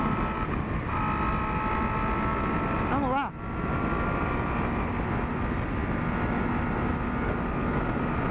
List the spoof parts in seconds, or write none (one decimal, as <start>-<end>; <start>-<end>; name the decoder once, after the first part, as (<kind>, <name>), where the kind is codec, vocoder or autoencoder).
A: none